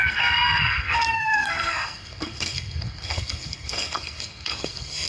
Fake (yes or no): yes